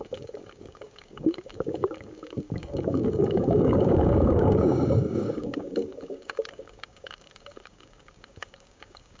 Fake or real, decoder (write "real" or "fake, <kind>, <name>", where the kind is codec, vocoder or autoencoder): fake, codec, DAC